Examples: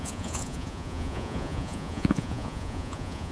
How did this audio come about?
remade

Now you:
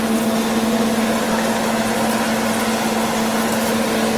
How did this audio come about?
recorded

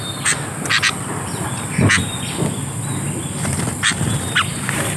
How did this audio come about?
recorded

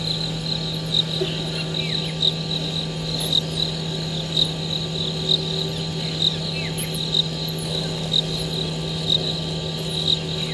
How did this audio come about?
recorded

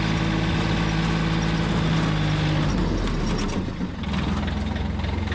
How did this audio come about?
recorded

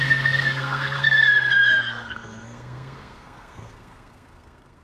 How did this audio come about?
remade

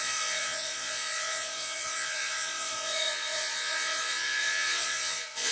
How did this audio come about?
remade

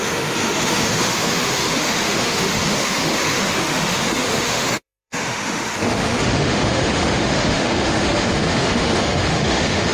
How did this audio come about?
remade